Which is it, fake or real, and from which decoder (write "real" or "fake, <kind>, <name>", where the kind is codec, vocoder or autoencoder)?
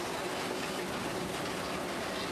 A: real